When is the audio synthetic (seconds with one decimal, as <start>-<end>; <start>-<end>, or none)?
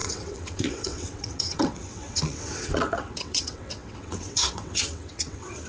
0.0-5.7